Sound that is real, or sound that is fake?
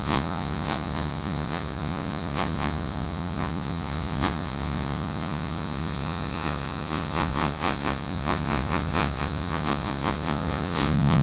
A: fake